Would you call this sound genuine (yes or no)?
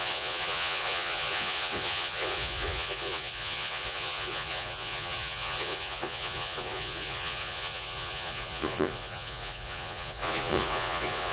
no